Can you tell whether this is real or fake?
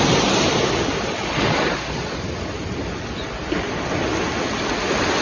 real